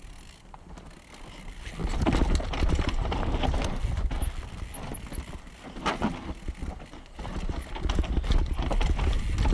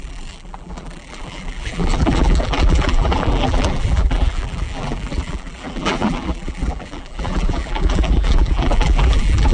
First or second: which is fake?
second